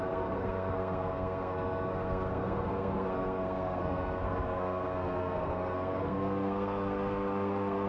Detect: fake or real fake